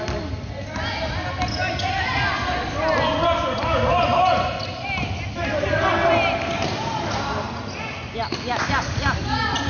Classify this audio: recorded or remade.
recorded